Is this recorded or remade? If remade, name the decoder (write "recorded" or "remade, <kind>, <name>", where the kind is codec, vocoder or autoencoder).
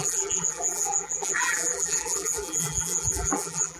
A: remade, vocoder, BigVGAN v2